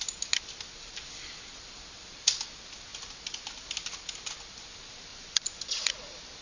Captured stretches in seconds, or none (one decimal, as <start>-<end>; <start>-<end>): 0.0-5.1; 5.9-6.4